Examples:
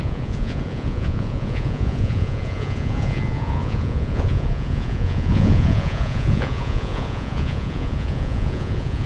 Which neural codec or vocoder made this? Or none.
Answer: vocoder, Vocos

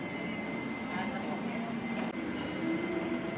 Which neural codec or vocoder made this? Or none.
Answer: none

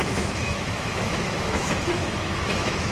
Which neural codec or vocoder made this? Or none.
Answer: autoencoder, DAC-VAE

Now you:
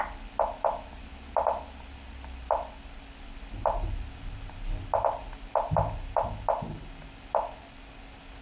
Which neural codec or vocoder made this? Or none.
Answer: none